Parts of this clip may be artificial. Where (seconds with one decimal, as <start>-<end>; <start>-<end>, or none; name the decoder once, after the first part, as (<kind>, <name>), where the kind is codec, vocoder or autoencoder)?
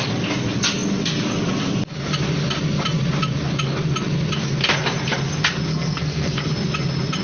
5.7-6.4 (codec, SNAC)